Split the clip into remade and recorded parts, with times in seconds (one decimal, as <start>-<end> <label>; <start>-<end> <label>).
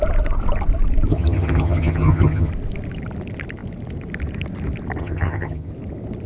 0.0-1.1 recorded; 1.1-2.5 remade; 2.5-5.0 recorded; 5.0-5.7 remade; 5.7-6.3 recorded